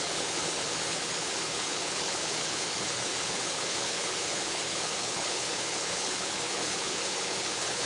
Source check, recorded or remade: remade